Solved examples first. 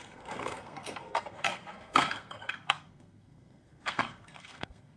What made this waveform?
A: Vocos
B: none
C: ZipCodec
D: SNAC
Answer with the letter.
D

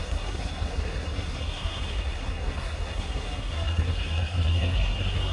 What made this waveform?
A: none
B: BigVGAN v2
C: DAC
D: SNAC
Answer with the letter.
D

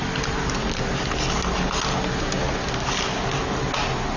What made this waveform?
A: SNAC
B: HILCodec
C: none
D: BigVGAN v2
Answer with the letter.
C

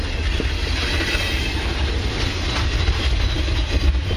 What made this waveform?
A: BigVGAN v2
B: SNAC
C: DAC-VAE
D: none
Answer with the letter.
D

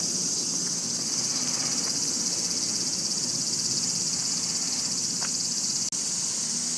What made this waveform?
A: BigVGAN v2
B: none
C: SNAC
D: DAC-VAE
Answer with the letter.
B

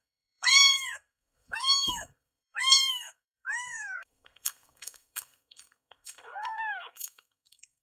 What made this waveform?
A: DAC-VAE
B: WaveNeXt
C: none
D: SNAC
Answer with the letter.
D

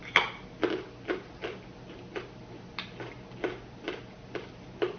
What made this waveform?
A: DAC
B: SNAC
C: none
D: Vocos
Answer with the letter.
C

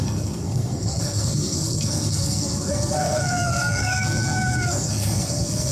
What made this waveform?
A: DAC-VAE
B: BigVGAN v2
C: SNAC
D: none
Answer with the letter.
C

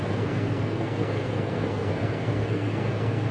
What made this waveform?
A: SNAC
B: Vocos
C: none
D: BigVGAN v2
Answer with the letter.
A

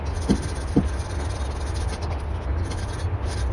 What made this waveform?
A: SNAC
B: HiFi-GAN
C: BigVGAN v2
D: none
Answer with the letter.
D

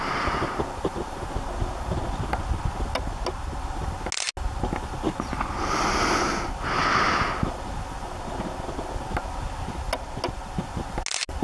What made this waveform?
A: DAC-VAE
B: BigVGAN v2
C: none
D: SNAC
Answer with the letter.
C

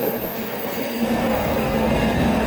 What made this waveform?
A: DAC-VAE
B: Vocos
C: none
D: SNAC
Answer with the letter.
D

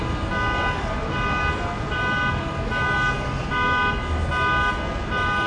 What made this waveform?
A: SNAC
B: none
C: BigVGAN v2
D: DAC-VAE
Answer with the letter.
B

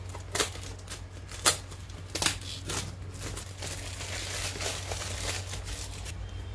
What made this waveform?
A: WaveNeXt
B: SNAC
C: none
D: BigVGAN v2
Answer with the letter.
C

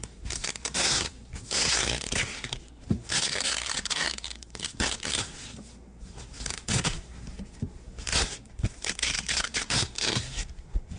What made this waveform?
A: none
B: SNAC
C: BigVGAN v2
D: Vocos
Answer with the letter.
B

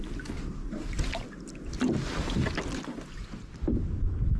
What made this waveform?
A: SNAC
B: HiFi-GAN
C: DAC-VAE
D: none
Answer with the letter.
D